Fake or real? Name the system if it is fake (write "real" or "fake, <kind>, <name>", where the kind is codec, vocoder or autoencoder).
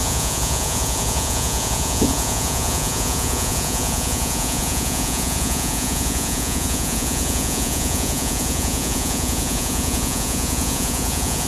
fake, vocoder, Vocos